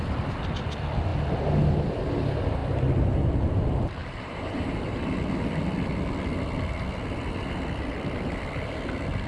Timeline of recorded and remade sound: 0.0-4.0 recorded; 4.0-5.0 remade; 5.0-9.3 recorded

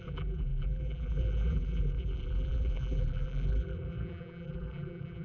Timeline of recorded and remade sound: 0.0-5.2 remade

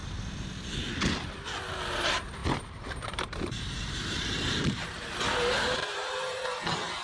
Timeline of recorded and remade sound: 0.0-2.4 recorded; 2.4-6.6 remade; 6.6-7.0 recorded

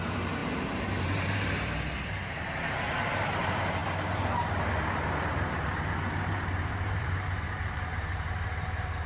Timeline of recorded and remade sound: 0.0-2.2 remade; 2.2-3.3 recorded; 3.3-3.8 remade; 3.8-6.1 recorded; 6.1-9.1 remade

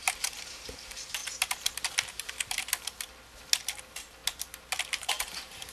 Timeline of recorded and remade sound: 0.0-1.2 remade; 1.2-3.8 recorded; 3.8-4.2 remade; 4.2-4.9 recorded; 4.9-5.7 remade

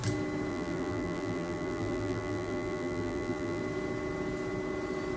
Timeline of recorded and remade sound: 0.0-0.5 recorded; 0.5-3.6 remade; 3.6-5.2 recorded

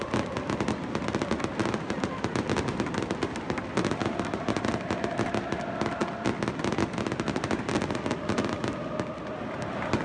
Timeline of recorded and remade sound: 0.0-10.0 recorded

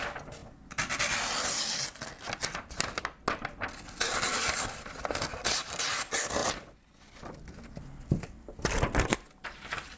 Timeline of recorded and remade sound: 0.0-6.4 recorded; 6.4-9.2 remade; 9.2-10.0 recorded